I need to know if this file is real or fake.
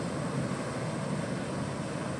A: real